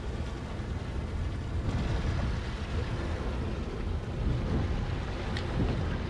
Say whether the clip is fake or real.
real